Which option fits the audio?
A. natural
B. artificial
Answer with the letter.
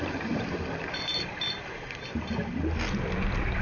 A